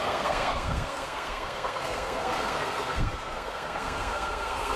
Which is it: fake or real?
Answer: fake